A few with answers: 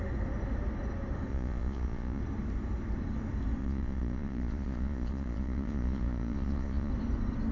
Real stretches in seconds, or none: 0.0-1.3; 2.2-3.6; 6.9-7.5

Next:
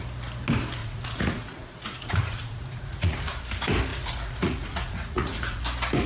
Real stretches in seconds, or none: 0.0-0.8; 3.4-3.9; 5.6-6.1

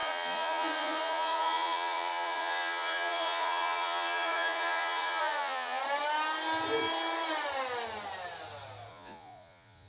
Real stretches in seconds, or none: 5.8-8.9

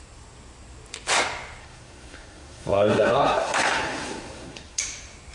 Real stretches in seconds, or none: 0.0-1.6; 4.8-5.3